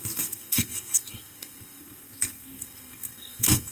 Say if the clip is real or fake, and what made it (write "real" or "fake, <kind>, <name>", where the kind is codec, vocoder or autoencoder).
fake, codec, SNAC